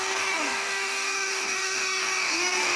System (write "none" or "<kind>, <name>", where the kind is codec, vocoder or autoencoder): codec, DAC